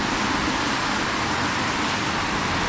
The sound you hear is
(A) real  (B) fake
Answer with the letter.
A